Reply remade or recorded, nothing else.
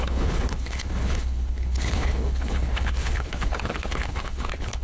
remade